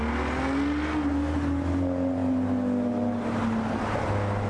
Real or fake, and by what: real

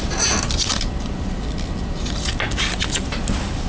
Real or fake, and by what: real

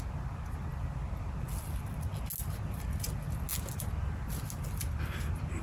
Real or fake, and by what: real